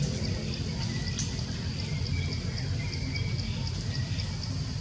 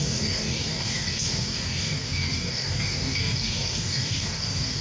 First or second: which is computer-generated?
second